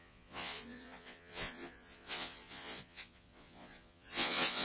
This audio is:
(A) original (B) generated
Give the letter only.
B